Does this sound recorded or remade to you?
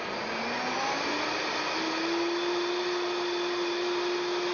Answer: recorded